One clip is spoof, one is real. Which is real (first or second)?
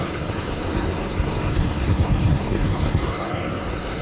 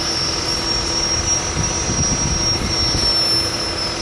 second